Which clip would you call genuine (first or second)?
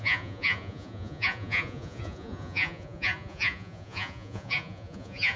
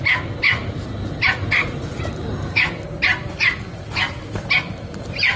second